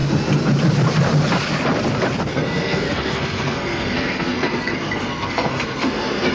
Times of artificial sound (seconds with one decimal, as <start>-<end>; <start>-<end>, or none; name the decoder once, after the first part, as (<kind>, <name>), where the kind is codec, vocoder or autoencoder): 2.3-6.3 (codec, SNAC)